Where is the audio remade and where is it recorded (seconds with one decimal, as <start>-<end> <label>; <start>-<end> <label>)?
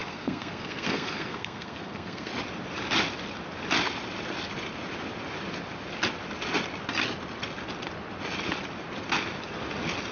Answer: 0.0-2.3 remade; 2.3-10.1 recorded